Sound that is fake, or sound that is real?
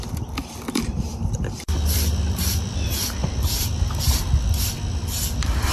fake